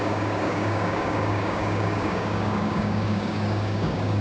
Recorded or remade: remade